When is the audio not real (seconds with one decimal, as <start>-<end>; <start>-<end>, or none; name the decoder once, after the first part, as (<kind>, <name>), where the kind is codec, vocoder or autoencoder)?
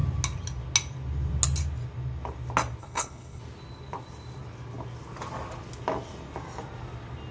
2.8-3.4 (codec, HILCodec)